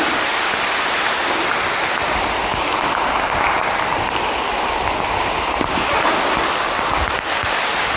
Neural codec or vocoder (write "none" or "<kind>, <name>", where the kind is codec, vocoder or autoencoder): none